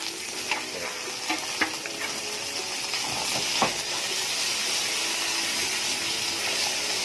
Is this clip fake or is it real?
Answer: real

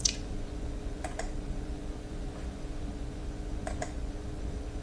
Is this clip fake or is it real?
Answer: fake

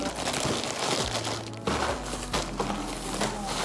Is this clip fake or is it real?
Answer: real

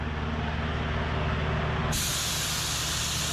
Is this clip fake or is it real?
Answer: real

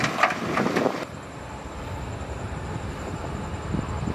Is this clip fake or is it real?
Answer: fake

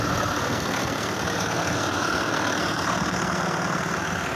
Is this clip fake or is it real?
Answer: fake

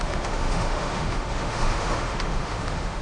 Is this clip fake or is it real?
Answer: fake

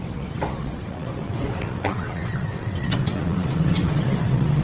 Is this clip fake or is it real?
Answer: fake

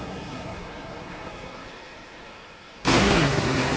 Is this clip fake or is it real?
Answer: fake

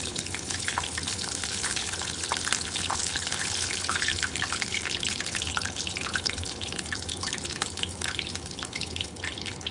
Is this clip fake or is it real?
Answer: fake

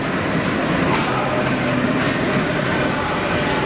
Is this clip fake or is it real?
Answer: real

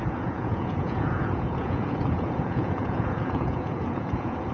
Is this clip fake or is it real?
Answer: fake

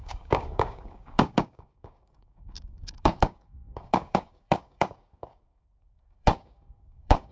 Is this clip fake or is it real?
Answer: fake